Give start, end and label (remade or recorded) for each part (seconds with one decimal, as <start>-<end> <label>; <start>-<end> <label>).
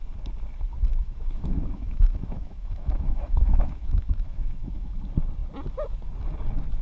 0.0-0.9 recorded; 0.9-5.0 remade; 5.0-6.8 recorded